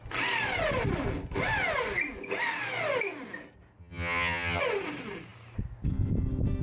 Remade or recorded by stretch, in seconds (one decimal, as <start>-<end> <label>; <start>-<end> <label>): 0.0-3.8 recorded; 3.8-4.6 remade; 4.6-6.6 recorded